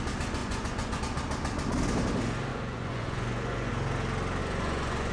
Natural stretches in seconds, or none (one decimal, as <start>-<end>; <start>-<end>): 0.0-0.4; 1.0-2.5; 3.7-4.4